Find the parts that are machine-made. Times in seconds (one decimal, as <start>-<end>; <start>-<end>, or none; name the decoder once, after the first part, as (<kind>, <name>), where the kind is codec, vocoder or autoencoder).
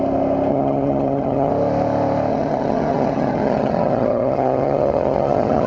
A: 0.5-1.5 (vocoder, HiFi-GAN); 2.3-5.7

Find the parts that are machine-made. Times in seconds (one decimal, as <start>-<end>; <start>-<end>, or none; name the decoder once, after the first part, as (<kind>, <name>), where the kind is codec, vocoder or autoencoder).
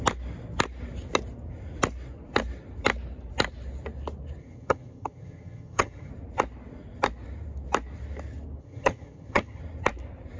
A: 4.4-6.1 (vocoder, HiFi-GAN); 8.6-9.6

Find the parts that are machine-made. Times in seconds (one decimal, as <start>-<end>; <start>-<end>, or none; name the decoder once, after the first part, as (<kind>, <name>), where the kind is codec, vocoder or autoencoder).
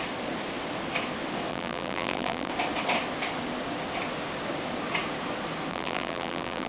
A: 1.5-2.5 (vocoder, BigVGAN v2); 5.7-6.7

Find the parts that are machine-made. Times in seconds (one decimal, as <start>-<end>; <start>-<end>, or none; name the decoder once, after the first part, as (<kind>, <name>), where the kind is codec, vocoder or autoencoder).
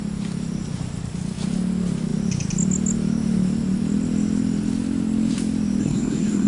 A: 5.8-6.5 (codec, SNAC)